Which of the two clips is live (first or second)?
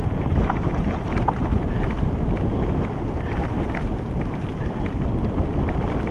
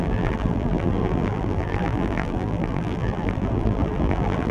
first